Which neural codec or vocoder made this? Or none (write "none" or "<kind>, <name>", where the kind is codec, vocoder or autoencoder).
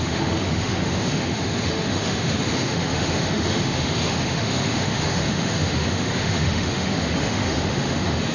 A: autoencoder, DAC-VAE